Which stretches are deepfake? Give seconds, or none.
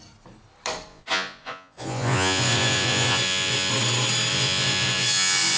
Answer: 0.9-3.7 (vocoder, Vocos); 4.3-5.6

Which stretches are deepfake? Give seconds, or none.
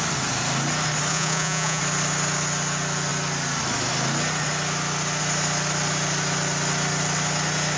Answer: 1.1-1.8 (vocoder, Vocos)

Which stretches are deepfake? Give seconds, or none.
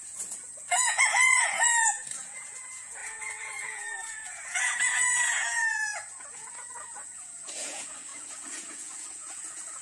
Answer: 0.0-9.8 (vocoder, Vocos)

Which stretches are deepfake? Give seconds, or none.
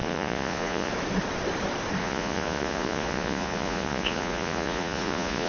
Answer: 0.0-0.9 (vocoder, Vocos); 2.0-5.5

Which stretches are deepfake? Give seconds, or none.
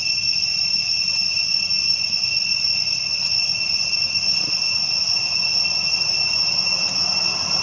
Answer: 1.4-4.4 (vocoder, Vocos)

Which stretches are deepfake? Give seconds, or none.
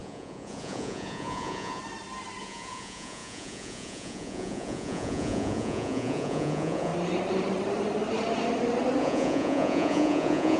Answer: 0.0-1.8 (vocoder, Vocos); 2.4-6.9; 9.0-10.6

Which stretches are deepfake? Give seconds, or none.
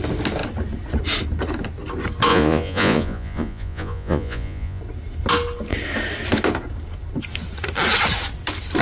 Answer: 2.3-4.8 (vocoder, Vocos)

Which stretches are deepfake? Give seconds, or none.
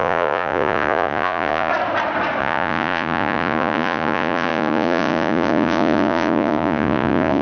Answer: 0.0-1.7 (vocoder, Vocos); 2.4-7.4